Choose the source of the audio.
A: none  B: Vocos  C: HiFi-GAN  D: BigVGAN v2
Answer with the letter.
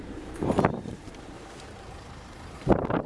D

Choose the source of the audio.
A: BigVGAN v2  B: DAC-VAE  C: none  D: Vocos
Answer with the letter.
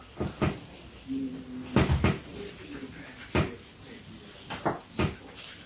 C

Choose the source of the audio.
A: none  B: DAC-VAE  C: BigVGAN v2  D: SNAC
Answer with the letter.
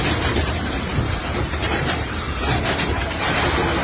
C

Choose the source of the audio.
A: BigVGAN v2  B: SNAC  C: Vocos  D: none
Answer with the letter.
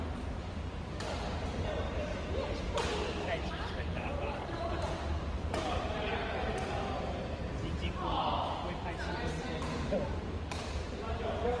A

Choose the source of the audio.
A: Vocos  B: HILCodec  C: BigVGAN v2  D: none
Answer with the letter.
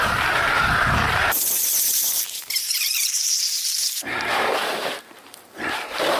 C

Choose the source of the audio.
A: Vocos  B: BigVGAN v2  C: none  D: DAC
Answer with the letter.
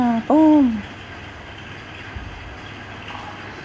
C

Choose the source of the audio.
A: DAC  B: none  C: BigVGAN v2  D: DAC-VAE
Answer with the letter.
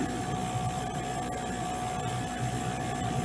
B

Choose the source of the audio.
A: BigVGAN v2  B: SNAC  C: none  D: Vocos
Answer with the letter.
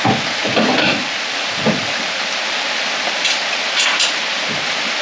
C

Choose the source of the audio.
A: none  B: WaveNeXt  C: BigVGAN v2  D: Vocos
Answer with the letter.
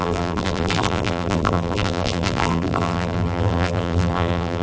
C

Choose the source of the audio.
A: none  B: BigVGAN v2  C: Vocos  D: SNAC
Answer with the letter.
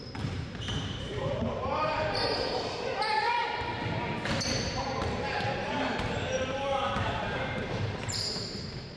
B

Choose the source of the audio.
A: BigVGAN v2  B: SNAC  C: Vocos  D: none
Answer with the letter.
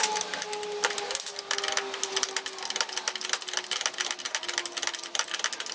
D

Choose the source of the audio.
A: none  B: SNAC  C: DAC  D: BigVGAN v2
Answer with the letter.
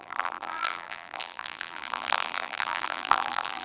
D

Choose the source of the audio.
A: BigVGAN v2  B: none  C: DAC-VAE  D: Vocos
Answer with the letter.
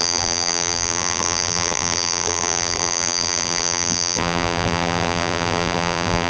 A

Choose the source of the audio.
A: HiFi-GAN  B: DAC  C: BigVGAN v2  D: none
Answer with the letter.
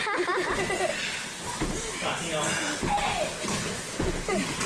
D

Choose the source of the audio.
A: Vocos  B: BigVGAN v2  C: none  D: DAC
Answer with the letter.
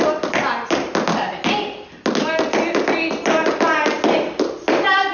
C